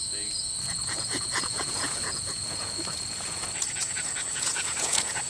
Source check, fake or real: fake